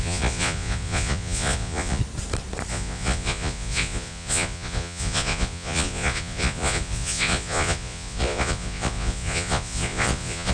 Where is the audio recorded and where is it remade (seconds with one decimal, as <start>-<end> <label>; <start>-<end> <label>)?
0.0-2.0 remade; 2.0-2.7 recorded; 2.7-10.5 remade